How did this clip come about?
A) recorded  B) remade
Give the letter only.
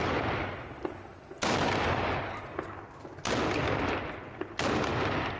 A